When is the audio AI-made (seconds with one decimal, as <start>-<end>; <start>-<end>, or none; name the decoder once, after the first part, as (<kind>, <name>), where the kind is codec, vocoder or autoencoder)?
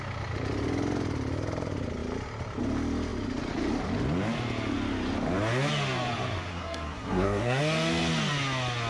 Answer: 6.5-7.6 (codec, SNAC)